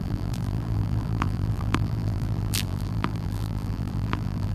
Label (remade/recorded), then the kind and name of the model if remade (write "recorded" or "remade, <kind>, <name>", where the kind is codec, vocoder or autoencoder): remade, vocoder, BigVGAN v2